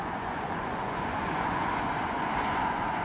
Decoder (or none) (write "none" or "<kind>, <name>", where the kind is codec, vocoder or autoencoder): vocoder, Vocos